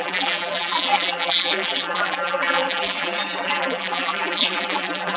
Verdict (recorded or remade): remade